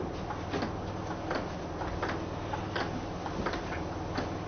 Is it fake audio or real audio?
real